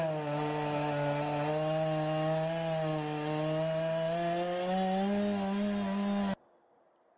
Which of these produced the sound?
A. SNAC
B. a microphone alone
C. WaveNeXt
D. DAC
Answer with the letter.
B